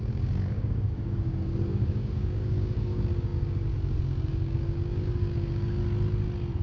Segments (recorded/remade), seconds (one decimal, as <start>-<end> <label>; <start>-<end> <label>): 0.0-5.8 remade; 5.8-6.6 recorded